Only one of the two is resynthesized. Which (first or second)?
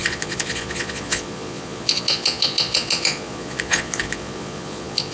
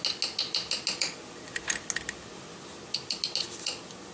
first